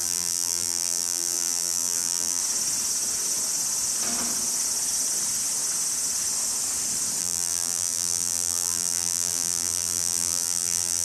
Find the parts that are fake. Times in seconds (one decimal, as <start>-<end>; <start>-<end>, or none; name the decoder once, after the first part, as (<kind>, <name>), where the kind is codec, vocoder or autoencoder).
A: 0.0-2.4 (vocoder, BigVGAN v2); 7.2-11.0